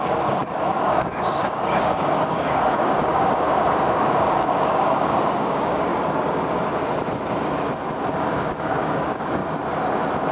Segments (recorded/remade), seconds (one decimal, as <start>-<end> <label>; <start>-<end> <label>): 0.0-5.9 remade; 5.9-8.0 recorded; 8.0-9.4 remade; 9.4-10.3 recorded